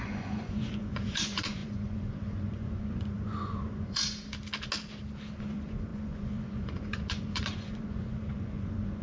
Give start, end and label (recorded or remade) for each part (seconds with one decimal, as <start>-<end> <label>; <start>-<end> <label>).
0.0-4.0 remade; 4.0-5.4 recorded; 5.4-9.0 remade